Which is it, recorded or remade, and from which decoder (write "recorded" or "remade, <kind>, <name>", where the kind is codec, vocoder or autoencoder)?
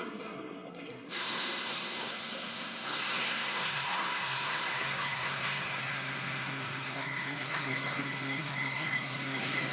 remade, codec, SNAC